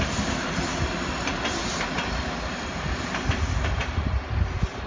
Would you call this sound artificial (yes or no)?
no